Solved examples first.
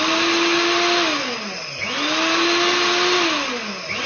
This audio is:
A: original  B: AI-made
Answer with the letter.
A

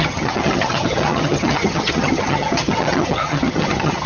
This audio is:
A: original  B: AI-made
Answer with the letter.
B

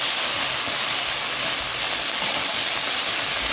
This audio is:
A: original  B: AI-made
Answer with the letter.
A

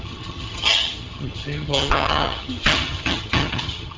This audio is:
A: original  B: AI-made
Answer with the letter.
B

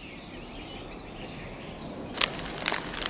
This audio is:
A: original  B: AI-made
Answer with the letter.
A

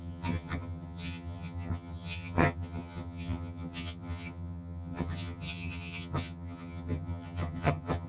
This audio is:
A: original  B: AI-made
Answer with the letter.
B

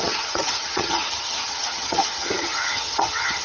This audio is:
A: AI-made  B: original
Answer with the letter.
A